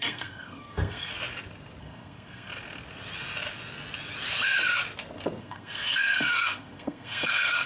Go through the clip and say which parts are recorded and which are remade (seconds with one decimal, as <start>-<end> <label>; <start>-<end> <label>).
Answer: 0.0-1.1 remade; 1.1-1.8 recorded; 1.8-2.5 remade; 2.5-5.4 recorded; 5.4-7.7 remade

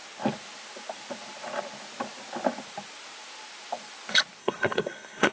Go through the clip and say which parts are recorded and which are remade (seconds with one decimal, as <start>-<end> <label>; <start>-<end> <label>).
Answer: 0.0-4.4 recorded; 4.4-5.3 remade

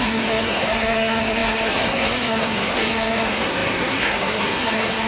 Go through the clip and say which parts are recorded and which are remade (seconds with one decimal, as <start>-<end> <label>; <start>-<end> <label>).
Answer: 0.0-5.1 remade